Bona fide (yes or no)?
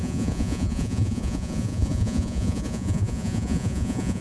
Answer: no